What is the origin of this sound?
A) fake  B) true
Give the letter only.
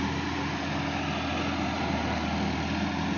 B